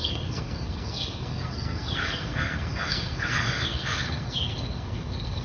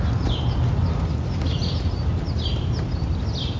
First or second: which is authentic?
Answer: second